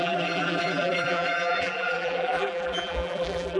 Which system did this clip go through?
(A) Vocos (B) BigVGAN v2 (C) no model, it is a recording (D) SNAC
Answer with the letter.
B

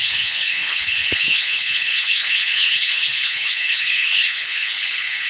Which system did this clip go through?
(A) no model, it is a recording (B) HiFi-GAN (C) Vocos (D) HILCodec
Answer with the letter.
D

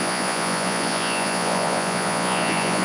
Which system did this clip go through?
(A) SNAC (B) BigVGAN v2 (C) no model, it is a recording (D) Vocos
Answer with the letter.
D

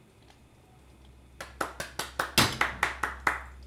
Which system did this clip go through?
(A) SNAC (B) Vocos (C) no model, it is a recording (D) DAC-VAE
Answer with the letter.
C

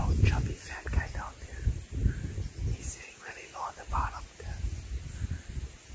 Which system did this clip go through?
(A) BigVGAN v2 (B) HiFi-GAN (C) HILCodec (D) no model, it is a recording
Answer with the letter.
D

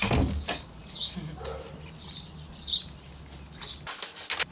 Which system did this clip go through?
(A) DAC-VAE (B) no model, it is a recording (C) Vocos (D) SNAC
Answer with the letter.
B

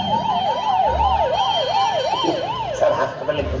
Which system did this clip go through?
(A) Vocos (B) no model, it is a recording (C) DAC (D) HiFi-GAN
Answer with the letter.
B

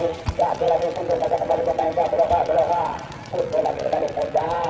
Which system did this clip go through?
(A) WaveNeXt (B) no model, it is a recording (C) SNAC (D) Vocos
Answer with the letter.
A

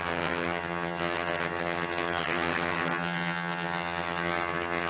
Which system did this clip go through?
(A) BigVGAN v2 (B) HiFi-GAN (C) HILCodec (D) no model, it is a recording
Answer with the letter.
B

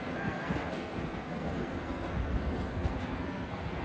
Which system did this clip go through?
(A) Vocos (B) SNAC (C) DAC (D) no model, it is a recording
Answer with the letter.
B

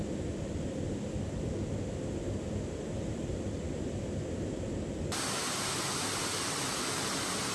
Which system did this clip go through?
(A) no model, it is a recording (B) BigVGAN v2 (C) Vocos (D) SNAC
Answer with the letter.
A